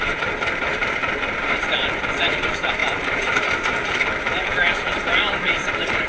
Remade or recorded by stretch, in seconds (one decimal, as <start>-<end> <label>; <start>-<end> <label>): 0.0-6.1 remade